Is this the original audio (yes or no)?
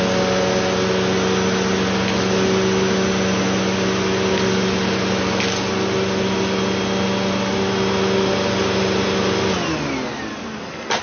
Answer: yes